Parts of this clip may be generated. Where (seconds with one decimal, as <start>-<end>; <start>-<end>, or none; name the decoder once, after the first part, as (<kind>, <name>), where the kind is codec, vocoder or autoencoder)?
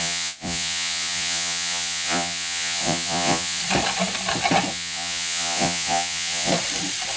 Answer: 0.0-3.6 (vocoder, Vocos); 4.7-6.5